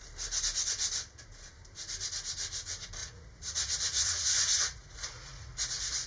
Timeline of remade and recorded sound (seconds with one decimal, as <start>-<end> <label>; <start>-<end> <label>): 0.0-3.0 recorded; 3.0-6.1 remade

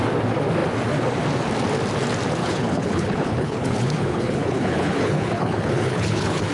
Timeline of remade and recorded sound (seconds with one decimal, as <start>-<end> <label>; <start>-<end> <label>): 0.0-2.4 recorded; 2.4-6.5 remade

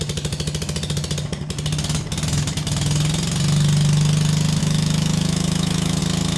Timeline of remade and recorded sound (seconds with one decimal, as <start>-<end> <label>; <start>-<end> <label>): 0.0-4.6 recorded; 4.6-6.0 remade; 6.0-6.4 recorded